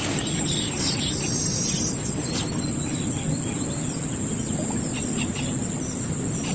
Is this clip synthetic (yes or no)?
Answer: no